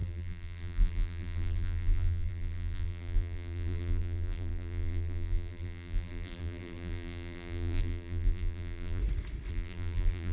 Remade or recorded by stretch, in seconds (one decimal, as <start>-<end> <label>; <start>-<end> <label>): 0.0-9.0 remade; 9.0-9.5 recorded; 9.5-10.3 remade